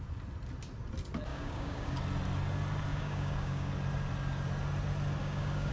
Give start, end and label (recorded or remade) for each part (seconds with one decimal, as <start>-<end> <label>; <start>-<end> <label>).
0.0-1.3 recorded; 1.3-2.0 remade; 2.0-2.9 recorded; 2.9-3.7 remade; 3.7-5.2 recorded; 5.2-5.7 remade